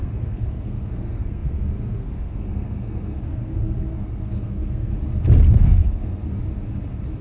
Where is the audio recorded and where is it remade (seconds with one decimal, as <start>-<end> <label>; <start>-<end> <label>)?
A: 0.0-4.9 remade; 4.9-5.5 recorded; 5.5-6.4 remade; 6.4-7.2 recorded